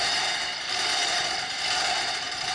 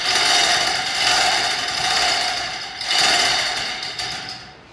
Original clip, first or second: second